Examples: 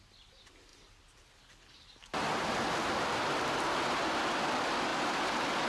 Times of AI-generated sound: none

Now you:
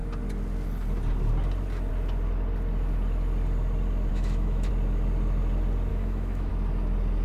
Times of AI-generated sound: 4.1-4.7 (autoencoder, DAC-VAE); 5.9-6.5

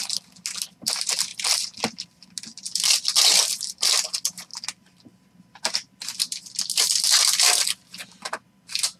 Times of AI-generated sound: 1.3-2.0 (vocoder, BigVGAN v2)

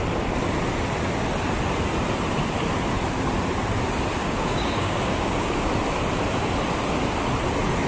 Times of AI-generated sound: 4.2-5.7 (codec, DAC)

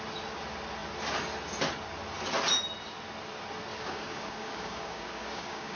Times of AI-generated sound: 3.7-5.8 (codec, DAC)

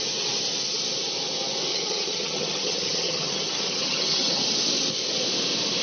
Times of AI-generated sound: 1.7-4.4 (vocoder, HiFi-GAN)

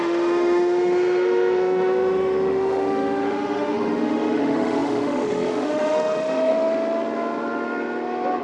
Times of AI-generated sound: 0.0-6.5 (autoencoder, DAC-VAE)

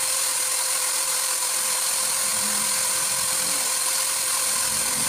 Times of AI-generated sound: 0.0-2.3 (vocoder, BigVGAN v2); 2.9-5.1